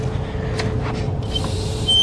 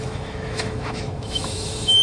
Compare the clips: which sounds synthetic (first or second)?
second